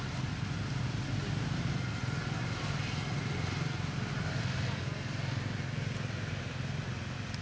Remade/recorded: recorded